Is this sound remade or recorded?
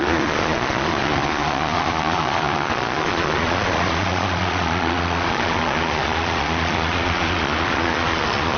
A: remade